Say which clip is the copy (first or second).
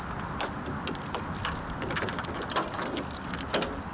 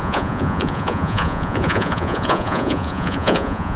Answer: second